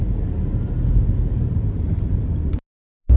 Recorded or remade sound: recorded